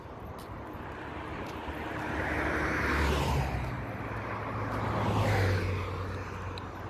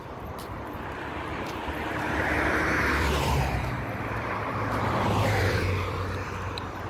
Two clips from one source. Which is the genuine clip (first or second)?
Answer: first